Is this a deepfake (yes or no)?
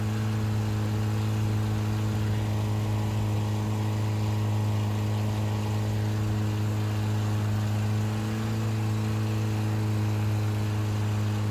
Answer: no